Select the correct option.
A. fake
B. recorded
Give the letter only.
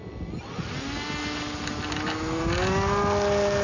B